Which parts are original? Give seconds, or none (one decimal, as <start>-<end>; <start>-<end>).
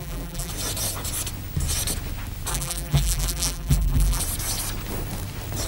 0.5-2.5; 4.2-5.7